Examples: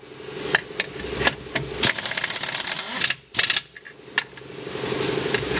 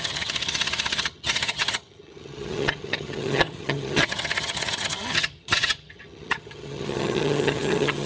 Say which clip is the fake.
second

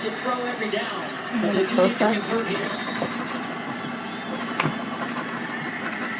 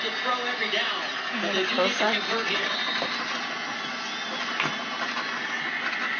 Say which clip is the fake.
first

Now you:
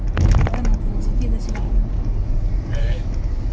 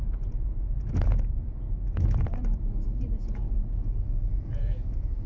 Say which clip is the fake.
second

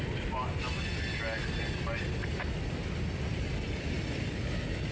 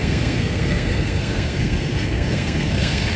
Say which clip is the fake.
second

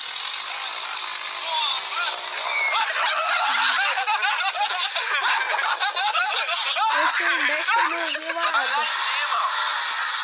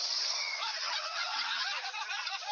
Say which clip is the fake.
second